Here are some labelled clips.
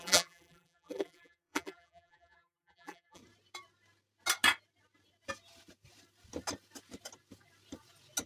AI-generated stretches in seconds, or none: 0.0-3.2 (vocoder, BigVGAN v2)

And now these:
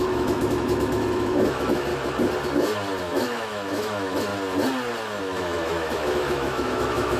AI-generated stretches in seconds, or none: 0.0-1.9 (autoencoder, DAC-VAE); 3.0-4.3; 5.2-7.2

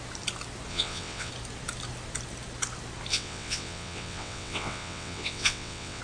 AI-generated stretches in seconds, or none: 0.7-1.3 (vocoder, WaveNeXt); 3.1-6.0

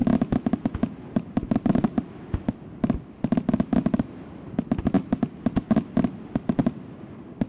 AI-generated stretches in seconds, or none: 1.1-1.9 (vocoder, BigVGAN v2); 6.4-7.5

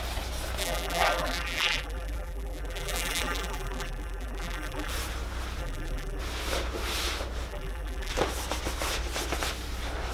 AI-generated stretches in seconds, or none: 0.6-4.9 (vocoder, BigVGAN v2); 5.6-6.2; 7.5-8.1

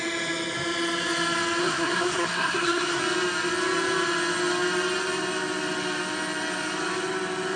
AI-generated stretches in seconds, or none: 1.6-3.0 (codec, SNAC)